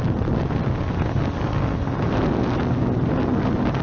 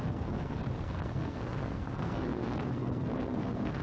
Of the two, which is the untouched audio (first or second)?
first